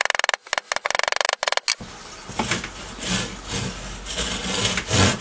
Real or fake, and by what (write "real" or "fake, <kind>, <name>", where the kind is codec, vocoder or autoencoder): real